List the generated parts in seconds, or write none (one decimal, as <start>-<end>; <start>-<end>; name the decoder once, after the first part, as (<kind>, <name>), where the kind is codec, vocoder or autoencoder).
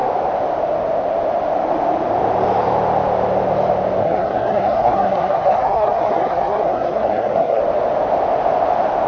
4.0-7.6 (codec, SNAC)